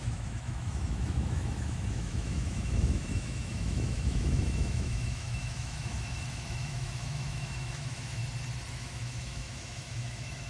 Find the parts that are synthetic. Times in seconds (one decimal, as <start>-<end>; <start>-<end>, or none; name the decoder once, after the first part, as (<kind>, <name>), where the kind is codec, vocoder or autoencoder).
0.0-8.2 (autoencoder, DAC-VAE); 8.7-10.5